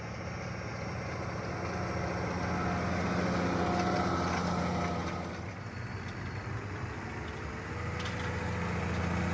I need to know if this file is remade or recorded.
recorded